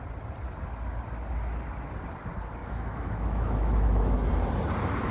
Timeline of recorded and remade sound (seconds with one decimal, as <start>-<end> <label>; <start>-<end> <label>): 0.0-2.6 recorded; 2.6-4.3 remade; 4.3-5.1 recorded